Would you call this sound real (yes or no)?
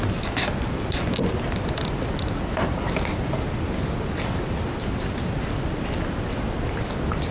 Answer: yes